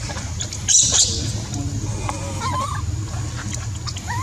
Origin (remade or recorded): recorded